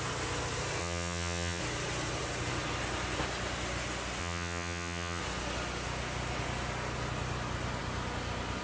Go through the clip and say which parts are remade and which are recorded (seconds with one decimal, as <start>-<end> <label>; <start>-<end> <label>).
0.0-0.8 recorded; 0.8-1.6 remade; 1.6-4.2 recorded; 4.2-5.2 remade; 5.2-8.6 recorded